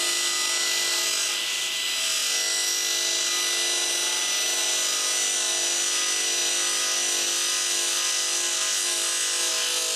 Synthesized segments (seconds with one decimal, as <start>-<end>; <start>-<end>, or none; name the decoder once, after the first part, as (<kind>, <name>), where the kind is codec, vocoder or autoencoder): none